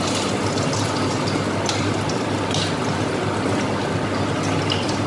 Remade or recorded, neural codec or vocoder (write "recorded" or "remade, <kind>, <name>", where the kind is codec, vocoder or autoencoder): recorded